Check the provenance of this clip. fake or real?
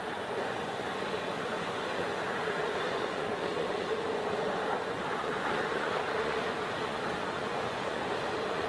fake